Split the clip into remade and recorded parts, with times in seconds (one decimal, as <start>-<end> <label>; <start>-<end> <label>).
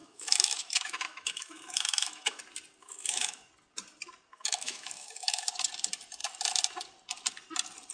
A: 0.0-2.4 remade; 2.4-2.8 recorded; 2.8-3.4 remade; 3.4-4.3 recorded; 4.3-5.5 remade; 5.5-7.9 recorded